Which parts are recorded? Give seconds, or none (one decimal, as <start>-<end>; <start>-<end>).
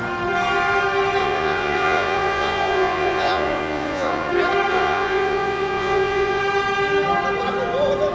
0.0-1.2; 4.3-4.7; 6.4-8.1